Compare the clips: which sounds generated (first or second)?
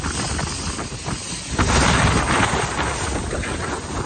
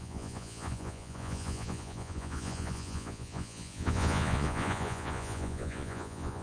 second